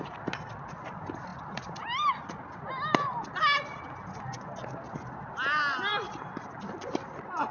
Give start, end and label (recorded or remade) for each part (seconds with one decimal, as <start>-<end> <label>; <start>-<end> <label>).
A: 0.0-7.5 recorded